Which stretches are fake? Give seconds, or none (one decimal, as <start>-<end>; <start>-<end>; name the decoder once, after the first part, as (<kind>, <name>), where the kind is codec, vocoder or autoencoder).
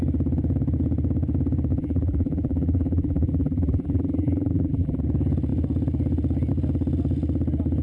1.7-5.0 (vocoder, BigVGAN v2)